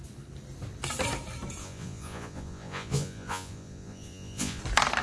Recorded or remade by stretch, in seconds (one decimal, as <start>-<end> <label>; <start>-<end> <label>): 0.0-1.6 recorded; 1.6-4.6 remade; 4.6-5.0 recorded

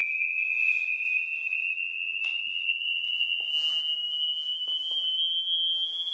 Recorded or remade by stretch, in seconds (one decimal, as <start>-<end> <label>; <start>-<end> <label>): 0.0-3.5 remade; 3.5-6.1 recorded